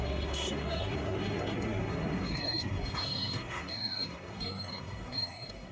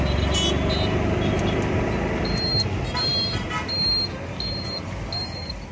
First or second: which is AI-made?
first